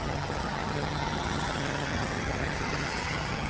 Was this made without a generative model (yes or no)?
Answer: no